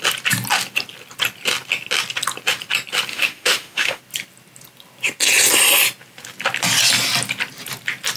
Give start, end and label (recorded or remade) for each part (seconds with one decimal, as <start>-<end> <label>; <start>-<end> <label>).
0.0-3.1 recorded; 3.1-4.0 remade; 4.0-8.2 recorded